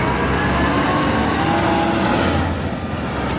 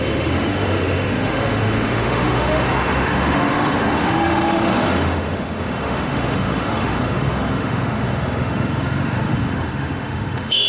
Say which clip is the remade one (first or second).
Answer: second